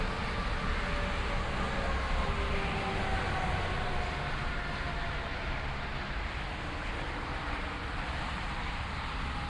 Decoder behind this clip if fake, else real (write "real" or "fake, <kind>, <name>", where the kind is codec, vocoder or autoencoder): real